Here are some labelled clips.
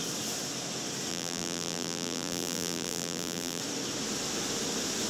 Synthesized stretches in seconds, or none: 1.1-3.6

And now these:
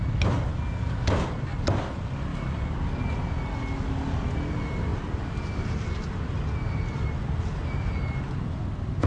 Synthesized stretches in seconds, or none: 2.3-3.1; 4.9-6.3

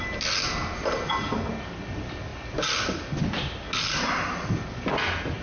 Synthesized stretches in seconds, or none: none

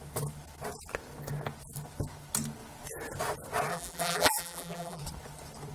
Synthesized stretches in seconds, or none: 3.7-5.0

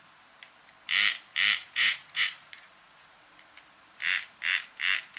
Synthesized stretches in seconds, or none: 1.6-3.4